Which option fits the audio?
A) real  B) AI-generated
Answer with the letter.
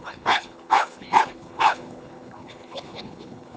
B